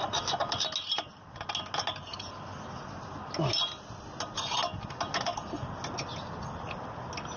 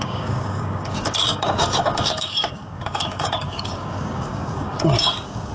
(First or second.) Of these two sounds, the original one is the first